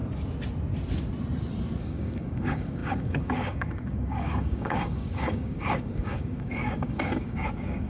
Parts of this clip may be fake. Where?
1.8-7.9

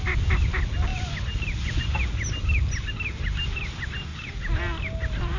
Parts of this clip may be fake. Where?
none

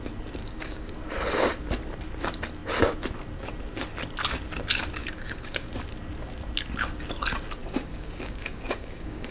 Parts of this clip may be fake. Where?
0.4-0.9; 5.0-5.7; 7.6-9.3

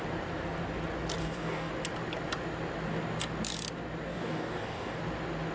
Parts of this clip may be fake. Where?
1.2-1.7; 4.1-5.0

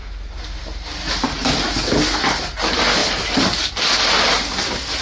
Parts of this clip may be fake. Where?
none

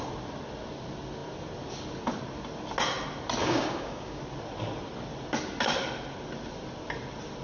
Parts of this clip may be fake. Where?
3.4-4.2

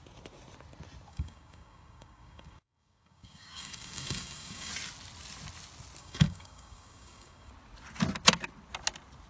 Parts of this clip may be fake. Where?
1.1-4.7; 6.0-7.5